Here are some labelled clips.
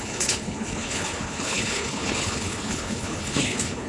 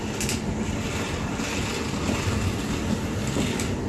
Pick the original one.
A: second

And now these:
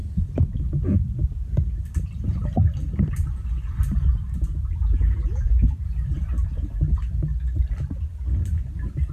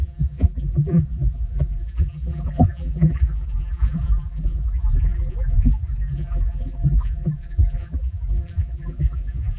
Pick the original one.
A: first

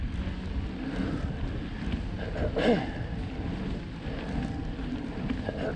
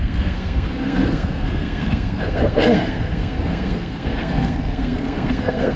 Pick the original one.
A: first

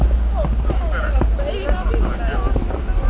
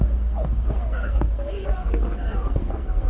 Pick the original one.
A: first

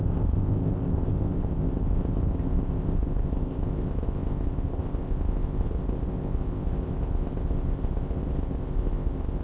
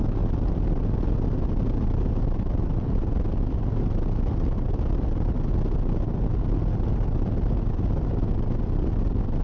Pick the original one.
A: second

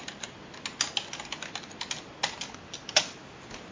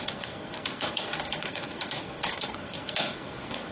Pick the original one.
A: first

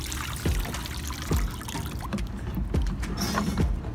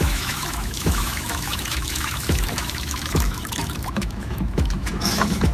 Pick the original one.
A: first